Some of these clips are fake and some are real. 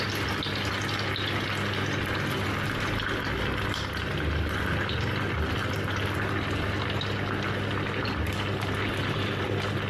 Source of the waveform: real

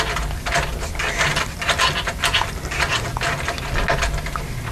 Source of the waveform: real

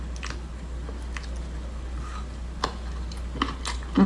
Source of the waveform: real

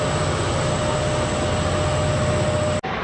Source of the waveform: real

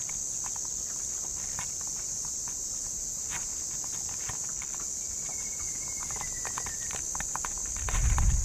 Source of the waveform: real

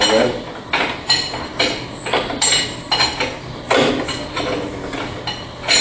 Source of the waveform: real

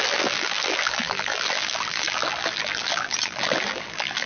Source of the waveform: fake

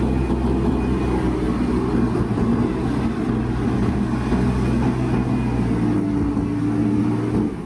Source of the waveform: real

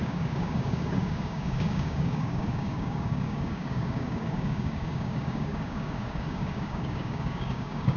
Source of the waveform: fake